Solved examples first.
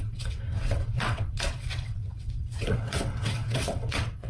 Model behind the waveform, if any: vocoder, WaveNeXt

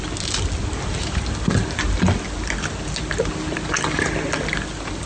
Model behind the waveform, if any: none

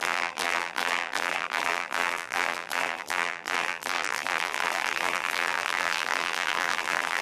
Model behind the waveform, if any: vocoder, BigVGAN v2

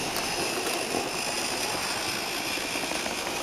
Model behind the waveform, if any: none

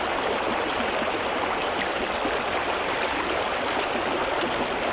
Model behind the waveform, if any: none